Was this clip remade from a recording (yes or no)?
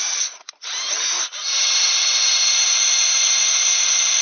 yes